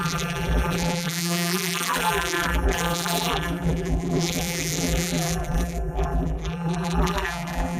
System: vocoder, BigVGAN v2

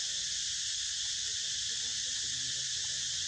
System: none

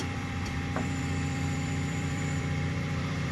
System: vocoder, BigVGAN v2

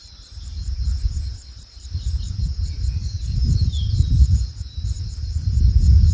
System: vocoder, BigVGAN v2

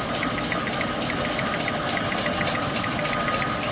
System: none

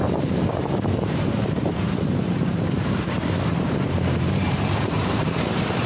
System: vocoder, BigVGAN v2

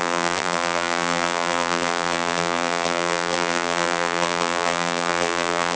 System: vocoder, BigVGAN v2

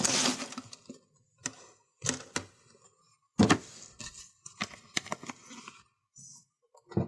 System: none